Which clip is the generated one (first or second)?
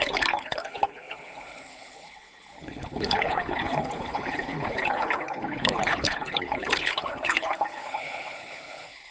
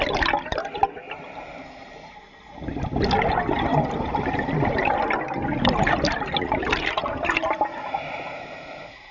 first